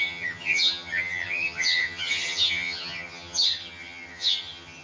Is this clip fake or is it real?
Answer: fake